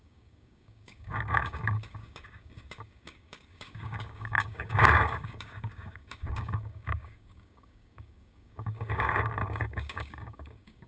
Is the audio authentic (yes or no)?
no